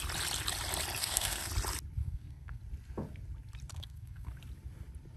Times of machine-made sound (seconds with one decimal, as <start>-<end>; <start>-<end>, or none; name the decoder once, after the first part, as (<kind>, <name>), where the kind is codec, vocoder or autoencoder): 1.0-1.5 (codec, SNAC); 2.0-2.6; 3.7-4.3

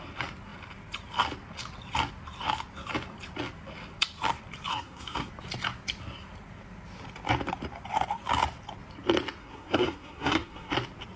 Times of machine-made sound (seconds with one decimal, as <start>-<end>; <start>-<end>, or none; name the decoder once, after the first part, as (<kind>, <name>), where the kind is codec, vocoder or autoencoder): 4.7-5.3 (codec, SNAC); 9.4-10.7

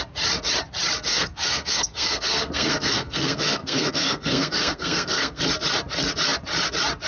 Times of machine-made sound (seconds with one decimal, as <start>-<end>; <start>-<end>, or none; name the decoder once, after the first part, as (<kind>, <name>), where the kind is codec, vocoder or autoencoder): 1.1-5.4 (codec, SNAC)

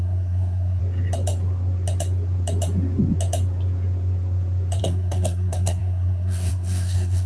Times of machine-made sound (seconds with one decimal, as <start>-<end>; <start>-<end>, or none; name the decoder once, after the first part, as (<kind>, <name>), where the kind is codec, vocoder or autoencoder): 0.0-0.8 (codec, SNAC); 4.8-7.3